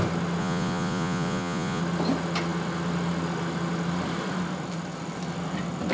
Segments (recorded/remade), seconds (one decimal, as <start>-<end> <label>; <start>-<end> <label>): 0.0-0.4 recorded; 0.4-1.8 remade; 1.8-5.9 recorded